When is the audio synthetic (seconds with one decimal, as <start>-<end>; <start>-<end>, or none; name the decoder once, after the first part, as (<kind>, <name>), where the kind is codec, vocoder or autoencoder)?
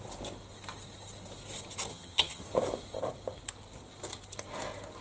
1.9-2.4 (vocoder, HiFi-GAN)